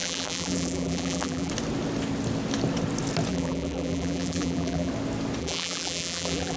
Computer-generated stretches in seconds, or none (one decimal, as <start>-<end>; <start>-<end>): 0.0-1.5; 3.3-4.9; 5.4-6.6